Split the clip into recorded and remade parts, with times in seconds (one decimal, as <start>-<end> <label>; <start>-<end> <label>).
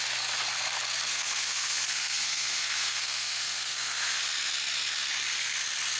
0.0-1.1 recorded; 1.1-4.2 remade; 4.2-6.0 recorded